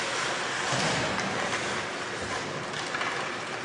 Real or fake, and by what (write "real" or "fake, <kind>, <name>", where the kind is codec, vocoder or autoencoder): real